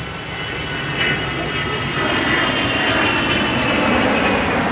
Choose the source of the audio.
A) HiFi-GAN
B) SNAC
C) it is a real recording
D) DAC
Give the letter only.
C